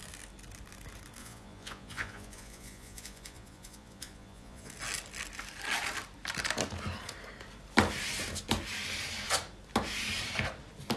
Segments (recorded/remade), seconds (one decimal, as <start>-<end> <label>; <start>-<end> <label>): 0.0-1.2 recorded; 1.2-4.7 remade; 4.7-11.0 recorded